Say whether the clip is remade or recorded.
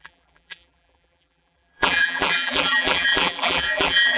remade